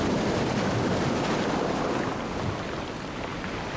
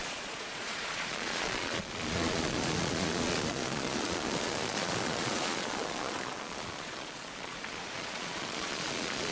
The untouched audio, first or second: first